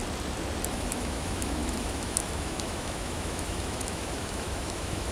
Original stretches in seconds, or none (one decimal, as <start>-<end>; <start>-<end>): 0.0-0.7